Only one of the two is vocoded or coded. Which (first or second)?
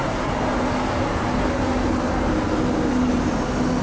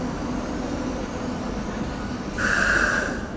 second